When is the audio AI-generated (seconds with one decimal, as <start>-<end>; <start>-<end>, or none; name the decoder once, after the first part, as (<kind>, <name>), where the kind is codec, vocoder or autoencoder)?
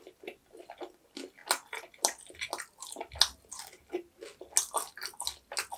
none